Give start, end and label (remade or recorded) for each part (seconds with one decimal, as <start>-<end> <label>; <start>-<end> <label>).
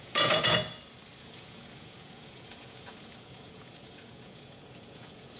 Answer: 0.0-0.6 remade; 0.6-1.2 recorded; 1.2-5.4 remade